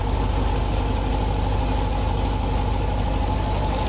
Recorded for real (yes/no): yes